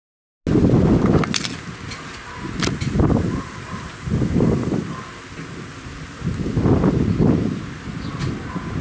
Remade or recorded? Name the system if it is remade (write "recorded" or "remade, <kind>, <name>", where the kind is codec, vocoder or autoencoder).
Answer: recorded